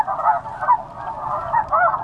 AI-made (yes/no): yes